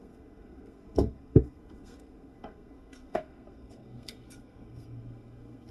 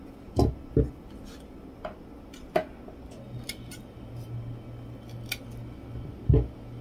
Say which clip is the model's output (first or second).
first